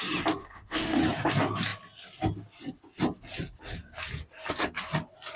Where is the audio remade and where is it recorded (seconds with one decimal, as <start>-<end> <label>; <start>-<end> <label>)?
0.0-0.4 recorded; 0.4-1.0 remade; 1.0-5.4 recorded